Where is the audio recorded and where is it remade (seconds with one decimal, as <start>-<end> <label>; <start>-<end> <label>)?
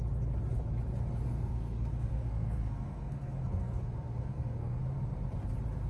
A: 0.0-1.3 recorded; 1.3-4.8 remade; 4.8-5.9 recorded